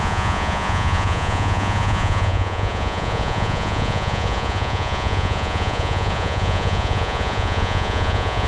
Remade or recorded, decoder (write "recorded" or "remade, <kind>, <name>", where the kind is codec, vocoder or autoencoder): remade, vocoder, Vocos